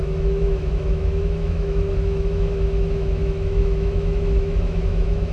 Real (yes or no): no